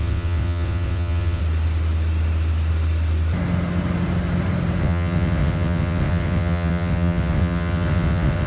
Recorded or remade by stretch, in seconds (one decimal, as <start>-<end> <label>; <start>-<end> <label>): 0.0-1.4 remade; 1.4-4.8 recorded; 4.8-8.5 remade